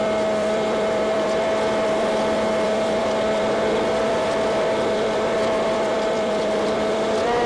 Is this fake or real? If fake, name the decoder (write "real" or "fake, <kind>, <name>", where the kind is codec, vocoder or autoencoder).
fake, vocoder, BigVGAN v2